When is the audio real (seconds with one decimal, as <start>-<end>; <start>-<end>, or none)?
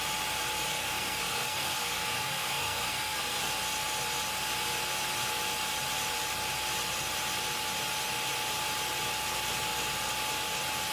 0.0-0.7; 3.5-10.9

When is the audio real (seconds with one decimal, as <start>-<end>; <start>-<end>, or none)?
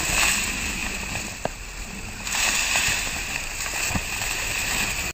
0.0-5.1